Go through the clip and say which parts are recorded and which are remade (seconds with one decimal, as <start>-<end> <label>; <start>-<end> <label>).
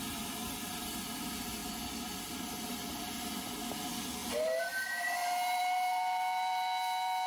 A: 0.0-7.3 recorded